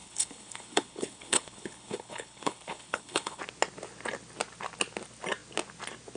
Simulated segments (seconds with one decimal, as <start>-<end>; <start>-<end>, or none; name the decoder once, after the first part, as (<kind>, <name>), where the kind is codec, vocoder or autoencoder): 0.0-3.4 (codec, HILCodec)